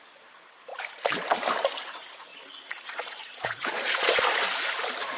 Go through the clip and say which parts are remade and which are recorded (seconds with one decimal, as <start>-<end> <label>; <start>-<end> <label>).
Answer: 0.0-2.3 recorded; 2.3-4.1 remade; 4.1-5.2 recorded